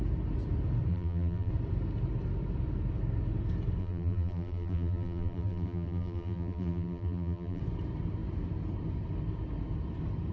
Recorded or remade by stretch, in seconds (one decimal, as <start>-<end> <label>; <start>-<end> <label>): 0.0-0.9 recorded; 0.9-1.5 remade; 1.5-3.8 recorded; 3.8-7.6 remade; 7.6-10.3 recorded